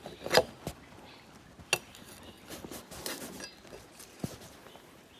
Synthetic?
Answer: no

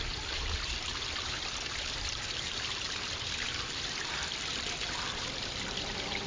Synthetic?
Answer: yes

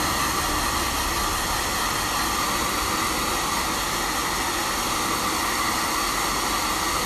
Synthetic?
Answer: no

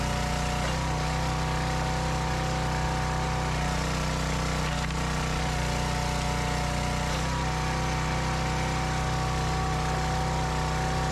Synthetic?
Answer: no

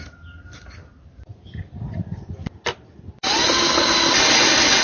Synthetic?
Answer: no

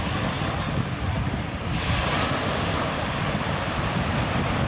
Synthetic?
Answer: no